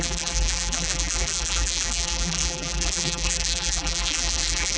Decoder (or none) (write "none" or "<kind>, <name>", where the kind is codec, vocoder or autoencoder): vocoder, BigVGAN v2